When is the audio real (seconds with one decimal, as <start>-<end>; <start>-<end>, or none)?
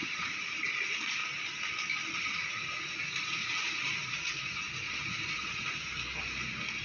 1.2-2.2; 5.8-6.8